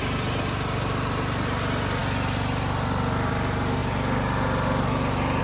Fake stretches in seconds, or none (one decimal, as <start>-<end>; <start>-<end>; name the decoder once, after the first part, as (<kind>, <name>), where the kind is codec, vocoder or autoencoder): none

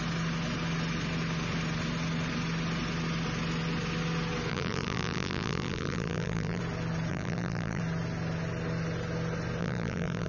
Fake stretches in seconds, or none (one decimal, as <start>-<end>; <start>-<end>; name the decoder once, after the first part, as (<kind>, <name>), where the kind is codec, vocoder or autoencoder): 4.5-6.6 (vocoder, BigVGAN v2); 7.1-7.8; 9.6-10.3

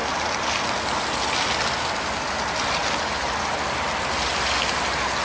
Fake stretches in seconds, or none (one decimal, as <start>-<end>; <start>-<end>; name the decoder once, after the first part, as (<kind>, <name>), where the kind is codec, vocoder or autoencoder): none

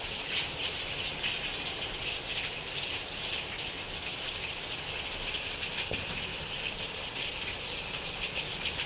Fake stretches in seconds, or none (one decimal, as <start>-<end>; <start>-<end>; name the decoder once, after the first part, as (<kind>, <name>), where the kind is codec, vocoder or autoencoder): 6.3-7.3 (vocoder, BigVGAN v2)

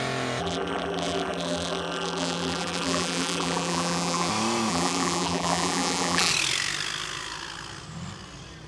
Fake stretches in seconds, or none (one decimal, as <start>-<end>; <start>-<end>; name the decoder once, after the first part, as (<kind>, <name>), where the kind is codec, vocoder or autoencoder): 0.4-4.3 (vocoder, BigVGAN v2); 4.7-6.3

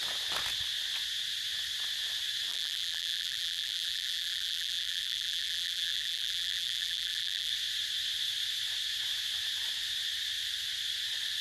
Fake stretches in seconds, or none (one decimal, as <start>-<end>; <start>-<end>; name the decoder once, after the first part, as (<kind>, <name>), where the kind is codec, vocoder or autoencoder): 2.5-7.5 (vocoder, BigVGAN v2)